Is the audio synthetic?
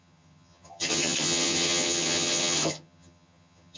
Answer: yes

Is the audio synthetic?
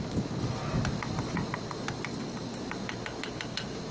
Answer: no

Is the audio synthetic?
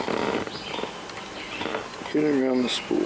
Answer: no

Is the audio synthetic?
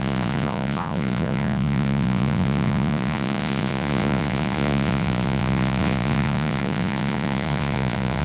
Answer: yes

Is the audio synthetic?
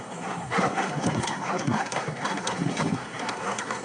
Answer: yes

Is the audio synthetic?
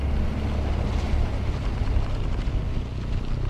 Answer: no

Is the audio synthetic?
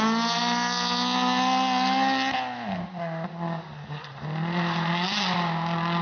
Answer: no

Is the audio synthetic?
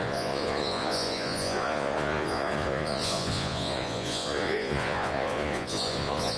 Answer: yes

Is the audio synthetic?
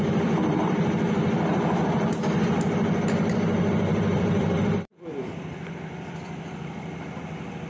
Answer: yes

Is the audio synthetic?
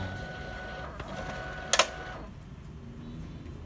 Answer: no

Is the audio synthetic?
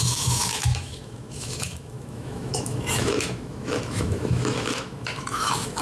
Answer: yes